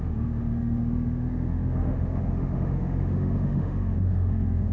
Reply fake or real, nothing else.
fake